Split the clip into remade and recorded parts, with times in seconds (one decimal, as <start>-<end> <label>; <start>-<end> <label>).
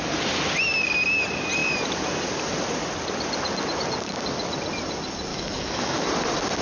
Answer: 0.0-5.3 recorded; 5.3-6.0 remade; 6.0-6.6 recorded